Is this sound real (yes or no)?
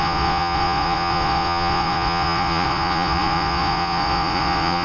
no